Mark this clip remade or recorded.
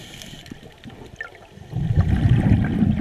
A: recorded